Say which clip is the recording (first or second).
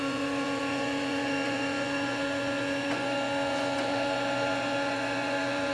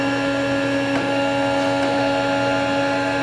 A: second